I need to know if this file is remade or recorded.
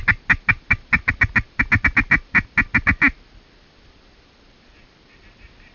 recorded